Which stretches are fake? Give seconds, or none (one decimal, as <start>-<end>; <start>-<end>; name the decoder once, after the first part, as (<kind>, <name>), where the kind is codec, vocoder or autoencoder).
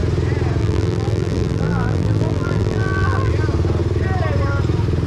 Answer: 0.6-3.3 (vocoder, BigVGAN v2)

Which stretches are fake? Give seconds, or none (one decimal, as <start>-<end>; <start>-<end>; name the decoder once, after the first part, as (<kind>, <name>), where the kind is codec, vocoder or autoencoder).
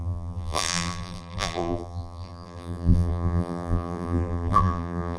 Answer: 0.0-5.2 (vocoder, BigVGAN v2)